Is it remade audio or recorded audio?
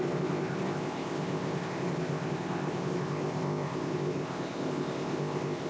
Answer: remade